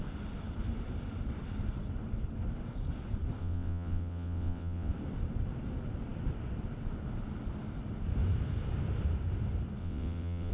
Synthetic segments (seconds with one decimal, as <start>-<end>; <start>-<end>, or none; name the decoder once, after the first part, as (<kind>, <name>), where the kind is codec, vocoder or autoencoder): 3.4-4.9 (vocoder, WaveNeXt); 9.8-10.5